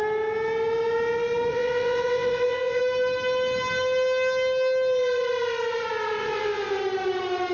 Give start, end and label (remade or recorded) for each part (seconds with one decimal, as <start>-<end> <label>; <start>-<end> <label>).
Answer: 0.0-1.5 recorded; 1.5-2.8 remade; 2.8-6.2 recorded; 6.2-6.8 remade; 6.8-7.5 recorded